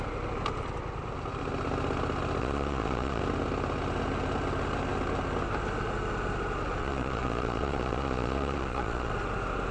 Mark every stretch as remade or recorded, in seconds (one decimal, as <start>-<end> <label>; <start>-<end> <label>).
0.0-2.4 recorded; 2.4-3.2 remade; 3.2-6.8 recorded; 6.8-9.1 remade; 9.1-9.7 recorded